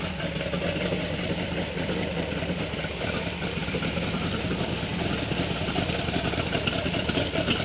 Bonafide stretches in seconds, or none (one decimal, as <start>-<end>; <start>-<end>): 0.0-7.6